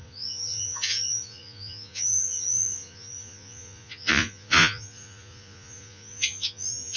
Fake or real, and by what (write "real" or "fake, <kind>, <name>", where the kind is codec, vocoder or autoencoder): fake, vocoder, Vocos